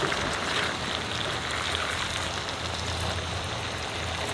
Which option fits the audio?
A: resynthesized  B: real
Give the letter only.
B